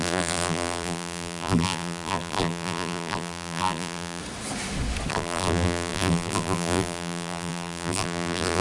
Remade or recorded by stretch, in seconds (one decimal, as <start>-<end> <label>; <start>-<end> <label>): 0.0-4.2 remade; 4.2-5.1 recorded; 5.1-8.6 remade